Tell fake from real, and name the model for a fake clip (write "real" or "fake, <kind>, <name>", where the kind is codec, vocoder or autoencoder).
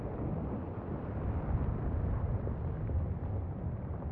fake, vocoder, BigVGAN v2